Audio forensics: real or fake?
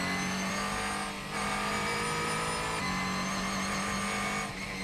real